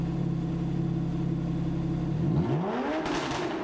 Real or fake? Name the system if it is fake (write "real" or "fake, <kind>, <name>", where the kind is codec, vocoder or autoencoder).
real